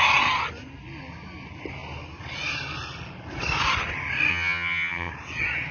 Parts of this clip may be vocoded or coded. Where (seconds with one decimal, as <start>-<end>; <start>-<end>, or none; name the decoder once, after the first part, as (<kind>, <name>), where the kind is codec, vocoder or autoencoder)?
4.3-5.1 (vocoder, HiFi-GAN)